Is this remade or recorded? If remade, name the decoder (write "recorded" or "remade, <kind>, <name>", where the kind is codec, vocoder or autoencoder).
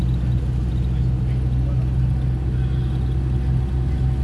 recorded